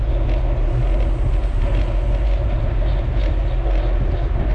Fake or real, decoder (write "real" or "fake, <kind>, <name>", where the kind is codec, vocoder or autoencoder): real